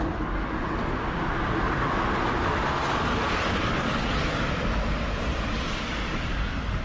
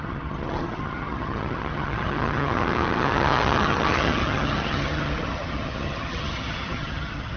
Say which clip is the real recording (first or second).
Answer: first